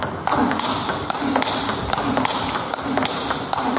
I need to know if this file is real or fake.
real